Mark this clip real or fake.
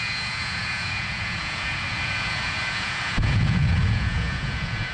fake